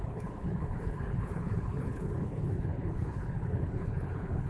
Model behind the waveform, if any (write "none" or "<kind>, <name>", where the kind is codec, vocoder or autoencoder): codec, HILCodec